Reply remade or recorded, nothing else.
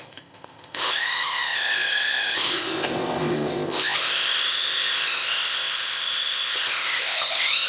remade